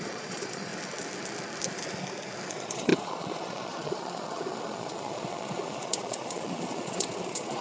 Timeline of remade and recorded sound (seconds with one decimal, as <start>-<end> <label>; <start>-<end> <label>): 0.0-0.7 remade; 0.7-2.5 recorded; 2.5-7.6 remade